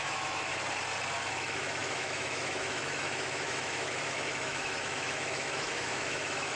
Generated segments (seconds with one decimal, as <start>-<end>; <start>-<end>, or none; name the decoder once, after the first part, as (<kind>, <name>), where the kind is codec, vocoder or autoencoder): 0.0-0.5 (autoencoder, DAC-VAE); 1.3-6.6